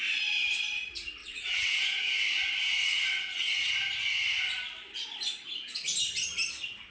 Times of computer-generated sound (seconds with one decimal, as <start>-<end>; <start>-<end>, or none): 1.2-2.1; 2.8-3.7